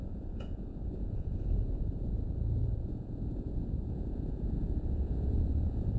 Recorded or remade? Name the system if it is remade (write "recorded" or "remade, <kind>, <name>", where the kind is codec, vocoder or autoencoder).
remade, vocoder, Vocos